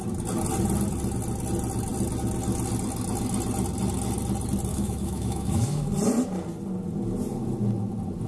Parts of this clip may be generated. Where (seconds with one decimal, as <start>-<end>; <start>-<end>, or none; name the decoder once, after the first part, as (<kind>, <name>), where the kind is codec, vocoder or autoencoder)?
4.7-5.9 (autoencoder, DAC-VAE)